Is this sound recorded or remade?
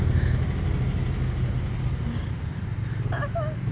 recorded